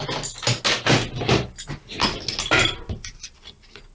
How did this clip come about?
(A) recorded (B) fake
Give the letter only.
A